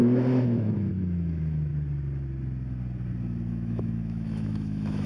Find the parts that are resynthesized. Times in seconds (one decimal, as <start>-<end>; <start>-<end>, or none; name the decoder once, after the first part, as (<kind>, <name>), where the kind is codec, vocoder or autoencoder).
0.0-1.7 (autoencoder, DAC-VAE); 3.5-5.1